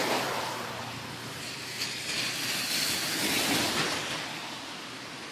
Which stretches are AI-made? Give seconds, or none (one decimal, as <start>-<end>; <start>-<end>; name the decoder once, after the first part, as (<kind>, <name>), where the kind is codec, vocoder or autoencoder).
none